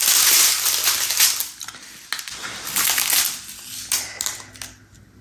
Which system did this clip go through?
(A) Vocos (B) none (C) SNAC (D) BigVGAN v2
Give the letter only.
B